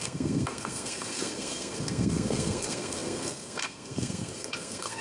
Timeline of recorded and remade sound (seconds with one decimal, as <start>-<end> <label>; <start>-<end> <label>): 0.0-5.0 remade

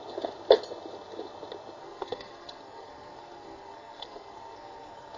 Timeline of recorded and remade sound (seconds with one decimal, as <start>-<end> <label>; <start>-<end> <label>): 0.0-1.8 recorded; 1.8-5.2 remade

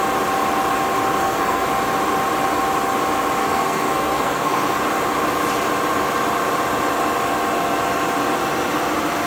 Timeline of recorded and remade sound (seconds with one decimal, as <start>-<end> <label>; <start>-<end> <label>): 0.0-1.2 recorded; 1.2-1.7 remade; 1.7-3.4 recorded; 3.4-4.8 remade; 4.8-9.3 recorded